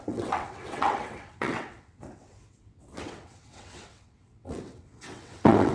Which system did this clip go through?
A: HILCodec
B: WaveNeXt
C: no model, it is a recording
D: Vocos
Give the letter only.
B